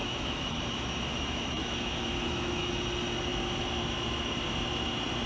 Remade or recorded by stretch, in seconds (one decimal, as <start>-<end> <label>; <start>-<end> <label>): 0.0-0.6 remade; 0.6-1.1 recorded; 1.1-2.7 remade; 2.7-5.3 recorded